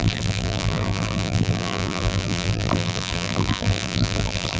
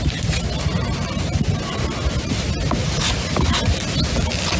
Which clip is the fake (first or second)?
first